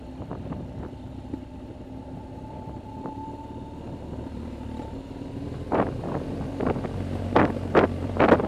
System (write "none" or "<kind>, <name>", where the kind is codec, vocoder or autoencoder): vocoder, BigVGAN v2